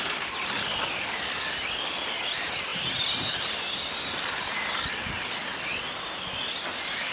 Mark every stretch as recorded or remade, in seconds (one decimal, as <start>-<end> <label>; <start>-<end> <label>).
0.0-7.1 recorded